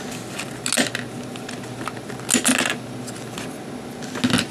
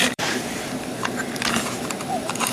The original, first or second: first